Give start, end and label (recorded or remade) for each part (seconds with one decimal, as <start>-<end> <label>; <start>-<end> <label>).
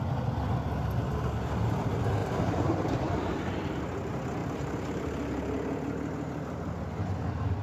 0.0-2.2 recorded; 2.2-3.8 remade; 3.8-4.4 recorded; 4.4-5.1 remade; 5.1-7.6 recorded